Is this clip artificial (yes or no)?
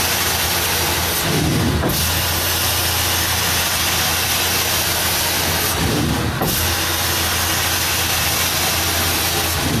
no